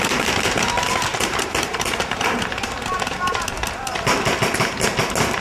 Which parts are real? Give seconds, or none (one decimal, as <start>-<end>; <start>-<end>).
0.0-1.1; 3.3-5.4